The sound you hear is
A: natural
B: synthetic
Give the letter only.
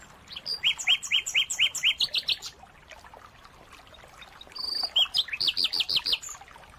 A